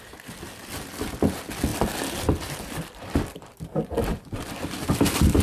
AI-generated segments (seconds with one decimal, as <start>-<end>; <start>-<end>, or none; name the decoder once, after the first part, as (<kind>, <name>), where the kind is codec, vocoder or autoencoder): 0.6-1.1 (vocoder, BigVGAN v2); 1.7-4.9